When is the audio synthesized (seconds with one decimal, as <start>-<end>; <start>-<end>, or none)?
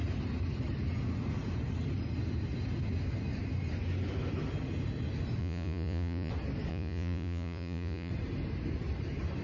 5.4-6.3; 6.7-8.1